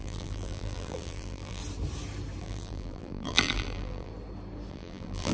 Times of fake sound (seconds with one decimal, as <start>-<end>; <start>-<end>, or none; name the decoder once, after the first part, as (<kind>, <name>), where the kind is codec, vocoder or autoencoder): 0.0-1.6 (vocoder, BigVGAN v2); 2.4-4.1; 4.7-5.3